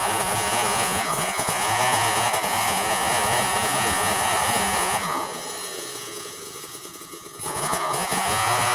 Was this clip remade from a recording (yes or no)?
yes